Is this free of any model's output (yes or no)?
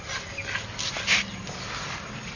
yes